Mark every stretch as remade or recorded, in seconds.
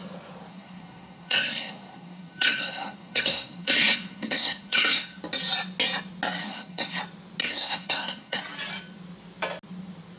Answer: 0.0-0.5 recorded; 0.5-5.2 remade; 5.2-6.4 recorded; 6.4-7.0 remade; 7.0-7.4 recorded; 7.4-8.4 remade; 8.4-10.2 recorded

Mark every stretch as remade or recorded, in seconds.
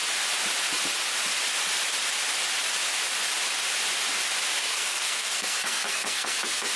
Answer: 0.0-4.6 recorded; 4.6-6.8 remade